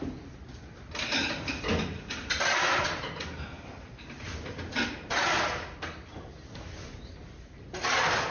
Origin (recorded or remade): recorded